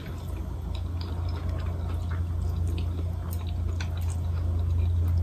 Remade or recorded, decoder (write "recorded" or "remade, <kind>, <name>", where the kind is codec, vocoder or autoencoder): recorded